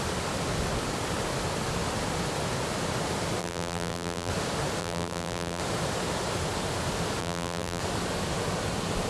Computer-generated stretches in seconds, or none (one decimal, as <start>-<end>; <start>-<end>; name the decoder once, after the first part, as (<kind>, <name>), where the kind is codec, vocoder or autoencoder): 3.4-4.3 (vocoder, BigVGAN v2); 4.8-5.6; 7.2-7.8